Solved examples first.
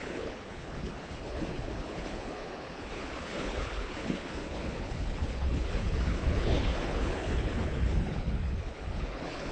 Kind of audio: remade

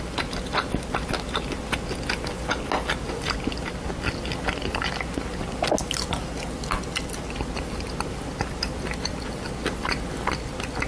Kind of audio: recorded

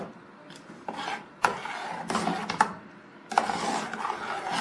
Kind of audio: recorded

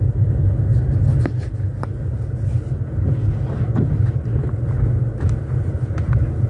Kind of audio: recorded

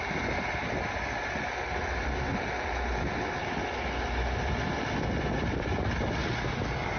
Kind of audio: recorded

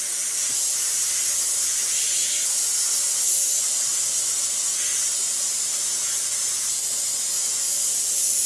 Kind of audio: recorded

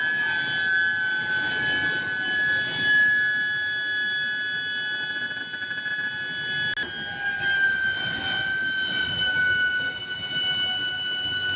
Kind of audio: recorded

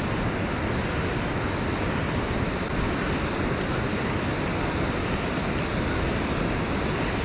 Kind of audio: recorded